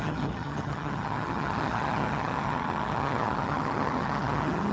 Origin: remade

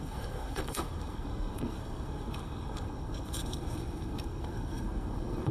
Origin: remade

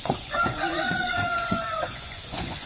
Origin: remade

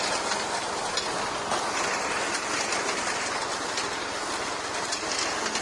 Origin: recorded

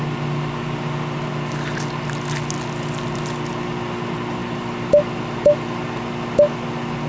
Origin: recorded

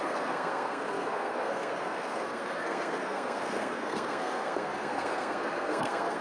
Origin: remade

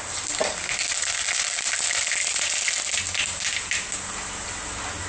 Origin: recorded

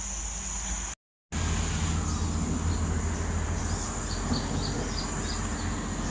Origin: recorded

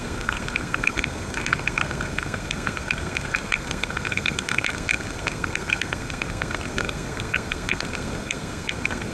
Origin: remade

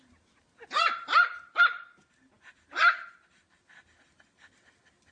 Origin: recorded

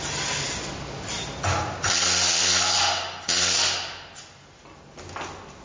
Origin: recorded